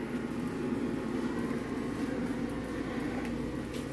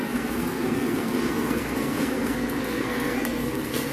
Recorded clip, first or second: first